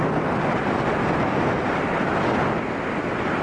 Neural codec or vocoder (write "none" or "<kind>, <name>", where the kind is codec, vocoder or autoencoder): none